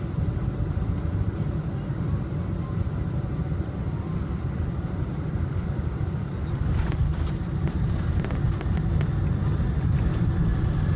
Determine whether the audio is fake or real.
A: real